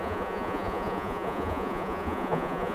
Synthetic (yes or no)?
yes